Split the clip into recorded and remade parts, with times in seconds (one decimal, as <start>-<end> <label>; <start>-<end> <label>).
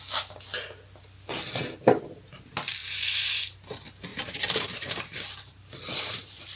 0.0-2.8 recorded; 2.8-3.4 remade; 3.4-4.1 recorded; 4.1-6.6 remade